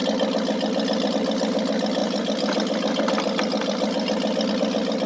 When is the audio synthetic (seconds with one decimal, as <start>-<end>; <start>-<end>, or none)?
none